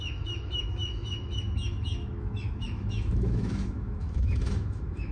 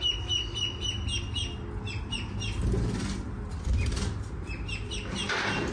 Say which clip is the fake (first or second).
first